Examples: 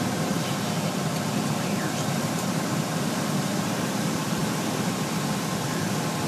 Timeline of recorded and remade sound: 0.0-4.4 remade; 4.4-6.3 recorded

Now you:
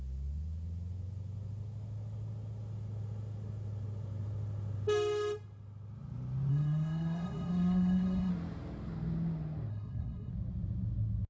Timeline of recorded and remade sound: 0.0-6.5 recorded; 6.5-8.3 remade; 8.3-9.7 recorded; 9.7-10.3 remade; 10.3-11.3 recorded

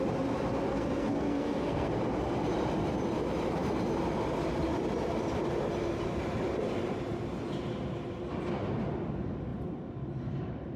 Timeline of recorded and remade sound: 0.0-0.7 recorded; 0.7-1.9 remade; 1.9-10.8 recorded